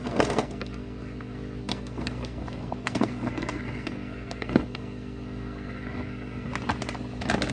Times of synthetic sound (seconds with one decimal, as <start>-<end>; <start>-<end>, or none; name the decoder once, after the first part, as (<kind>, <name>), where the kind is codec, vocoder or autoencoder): 0.0-6.5 (codec, SNAC)